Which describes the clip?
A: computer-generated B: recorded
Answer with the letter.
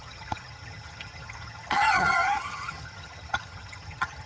A